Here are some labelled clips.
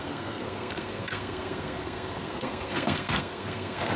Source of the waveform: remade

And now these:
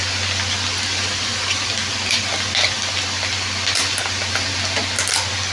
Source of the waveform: recorded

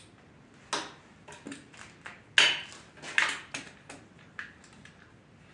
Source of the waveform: recorded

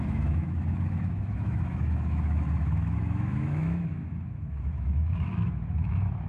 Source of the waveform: remade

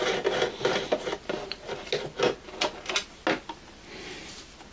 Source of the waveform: recorded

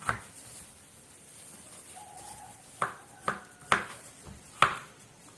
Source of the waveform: recorded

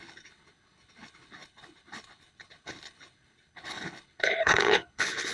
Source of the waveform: remade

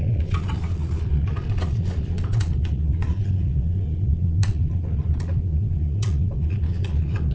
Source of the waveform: remade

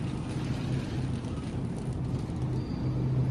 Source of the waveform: recorded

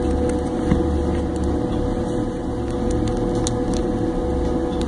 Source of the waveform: recorded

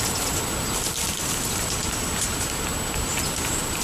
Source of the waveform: recorded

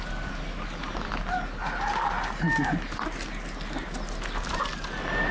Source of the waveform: recorded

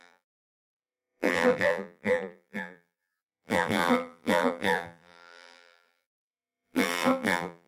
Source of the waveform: remade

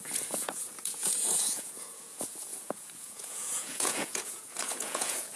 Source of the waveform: remade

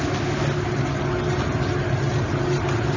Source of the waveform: recorded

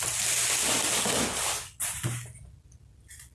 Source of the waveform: recorded